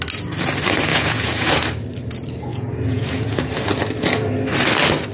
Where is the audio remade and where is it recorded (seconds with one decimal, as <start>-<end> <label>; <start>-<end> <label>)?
0.0-0.9 recorded; 0.9-1.5 remade; 1.5-2.5 recorded; 2.5-3.5 remade; 3.5-5.1 recorded